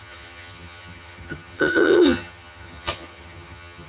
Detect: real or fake fake